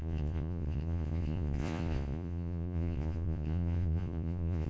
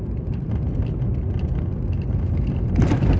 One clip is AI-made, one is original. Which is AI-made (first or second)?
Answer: first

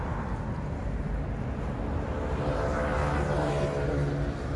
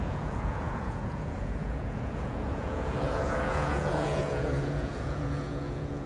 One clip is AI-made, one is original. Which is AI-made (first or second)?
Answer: second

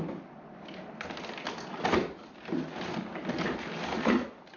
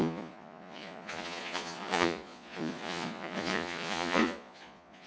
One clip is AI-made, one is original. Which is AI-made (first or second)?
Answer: second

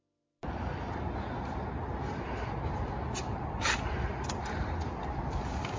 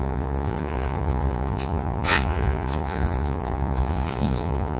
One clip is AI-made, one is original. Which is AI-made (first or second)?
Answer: second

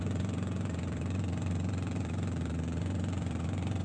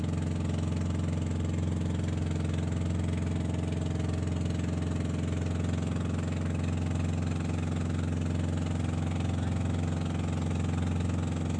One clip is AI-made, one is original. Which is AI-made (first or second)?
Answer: first